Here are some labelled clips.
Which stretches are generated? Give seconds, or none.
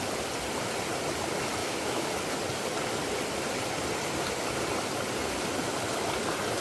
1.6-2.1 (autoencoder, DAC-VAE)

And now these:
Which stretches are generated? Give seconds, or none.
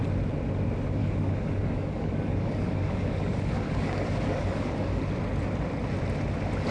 1.0-5.0 (codec, DAC)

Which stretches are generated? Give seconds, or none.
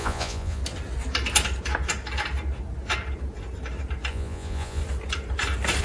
0.0-0.6 (vocoder, Vocos); 4.1-4.8